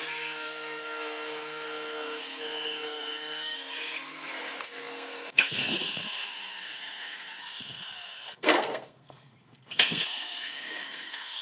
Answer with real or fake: fake